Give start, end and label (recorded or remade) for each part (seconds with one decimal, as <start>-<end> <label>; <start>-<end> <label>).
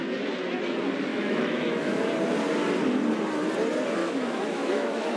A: 0.0-1.1 recorded; 1.1-2.1 remade; 2.1-4.0 recorded; 4.0-5.2 remade